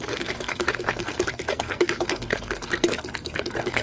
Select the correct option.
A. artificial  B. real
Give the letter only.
A